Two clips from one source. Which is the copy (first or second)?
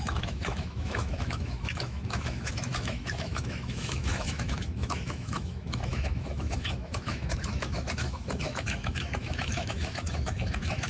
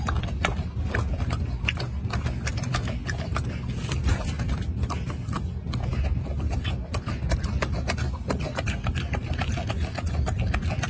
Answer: first